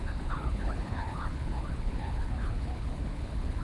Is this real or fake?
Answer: fake